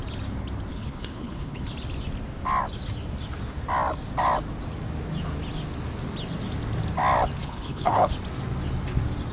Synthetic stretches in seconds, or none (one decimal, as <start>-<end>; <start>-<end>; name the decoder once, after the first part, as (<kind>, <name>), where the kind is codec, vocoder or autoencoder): 0.7-1.7 (codec, HILCodec); 7.4-8.1